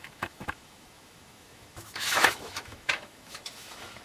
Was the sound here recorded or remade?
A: remade